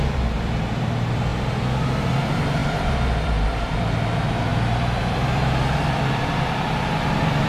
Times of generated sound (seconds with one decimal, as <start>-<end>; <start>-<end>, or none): 0.0-1.3; 2.1-7.5